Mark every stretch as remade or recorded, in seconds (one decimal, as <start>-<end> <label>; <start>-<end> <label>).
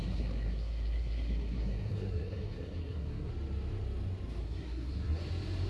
0.0-3.3 remade; 3.3-4.4 recorded; 4.4-5.2 remade; 5.2-5.7 recorded